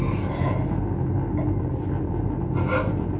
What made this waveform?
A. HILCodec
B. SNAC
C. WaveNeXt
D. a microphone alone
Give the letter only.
D